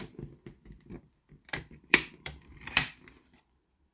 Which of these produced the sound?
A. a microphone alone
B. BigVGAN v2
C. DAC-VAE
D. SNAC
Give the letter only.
B